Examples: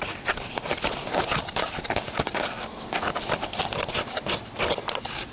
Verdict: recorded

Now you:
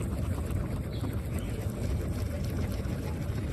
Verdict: recorded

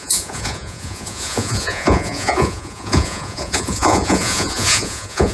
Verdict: remade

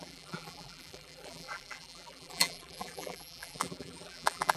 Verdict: remade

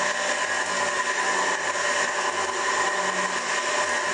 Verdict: recorded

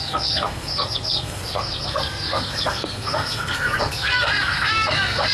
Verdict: remade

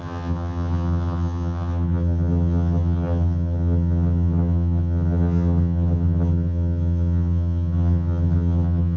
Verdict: remade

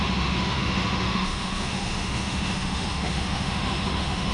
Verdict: remade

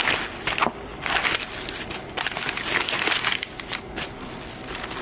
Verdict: recorded